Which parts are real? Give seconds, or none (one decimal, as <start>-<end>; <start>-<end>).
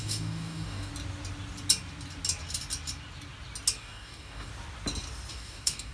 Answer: 0.9-3.8; 4.5-5.3